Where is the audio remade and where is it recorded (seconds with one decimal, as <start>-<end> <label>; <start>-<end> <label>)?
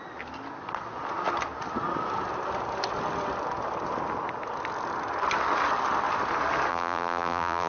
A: 0.0-6.7 recorded; 6.7-7.7 remade